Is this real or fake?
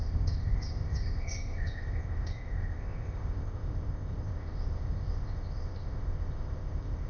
fake